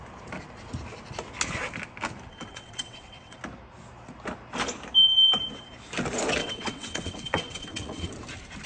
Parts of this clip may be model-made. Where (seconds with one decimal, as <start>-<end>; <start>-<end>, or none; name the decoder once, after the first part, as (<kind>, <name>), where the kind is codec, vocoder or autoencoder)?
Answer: 2.3-3.4 (vocoder, WaveNeXt); 6.4-8.1